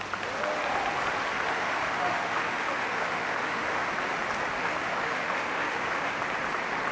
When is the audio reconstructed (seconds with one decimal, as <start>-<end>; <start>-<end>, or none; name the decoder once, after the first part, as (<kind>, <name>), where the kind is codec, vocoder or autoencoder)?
1.5-3.9 (autoencoder, DAC-VAE); 4.6-6.2